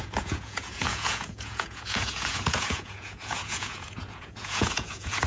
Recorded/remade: remade